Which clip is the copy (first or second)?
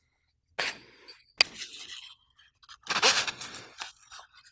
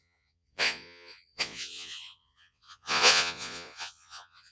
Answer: second